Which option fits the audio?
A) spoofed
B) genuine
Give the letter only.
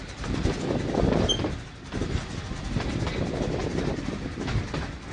B